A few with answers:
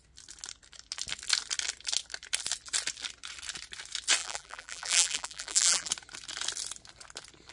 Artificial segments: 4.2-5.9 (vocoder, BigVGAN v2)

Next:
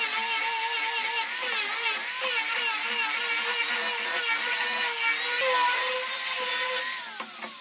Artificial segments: none

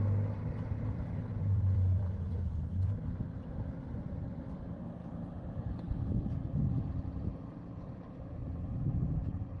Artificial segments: 0.0-5.0 (vocoder, BigVGAN v2); 6.2-8.4; 9.1-9.6

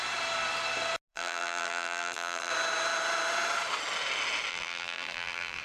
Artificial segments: 1.1-2.5 (vocoder, BigVGAN v2); 4.5-5.6

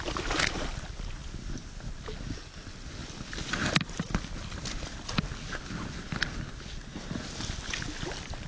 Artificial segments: 3.0-3.7 (vocoder, BigVGAN v2)

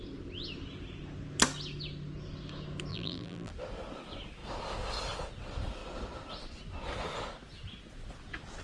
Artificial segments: 2.9-3.5 (vocoder, BigVGAN v2)

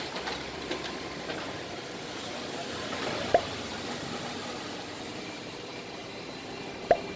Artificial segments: 0.0-7.2 (vocoder, BigVGAN v2)

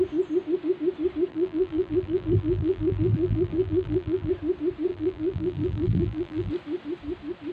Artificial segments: 1.3-4.3 (vocoder, BigVGAN v2); 4.9-6.5